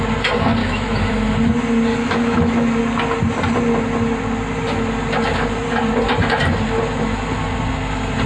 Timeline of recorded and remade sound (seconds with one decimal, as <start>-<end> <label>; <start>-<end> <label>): 0.0-0.6 recorded; 0.6-1.1 remade; 1.1-1.9 recorded; 1.9-2.8 remade; 2.8-8.3 recorded